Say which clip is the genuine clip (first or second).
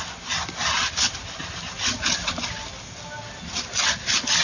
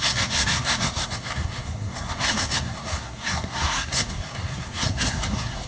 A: first